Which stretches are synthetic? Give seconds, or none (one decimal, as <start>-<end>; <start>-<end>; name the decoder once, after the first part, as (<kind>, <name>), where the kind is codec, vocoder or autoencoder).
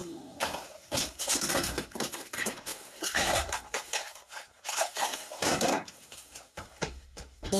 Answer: 0.0-7.6 (codec, SNAC)